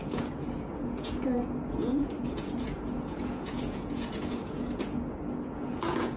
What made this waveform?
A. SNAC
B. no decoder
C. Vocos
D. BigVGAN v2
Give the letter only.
C